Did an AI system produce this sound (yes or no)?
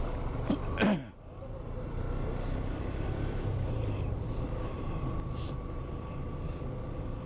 no